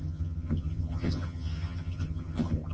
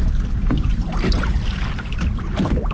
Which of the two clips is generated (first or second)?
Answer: first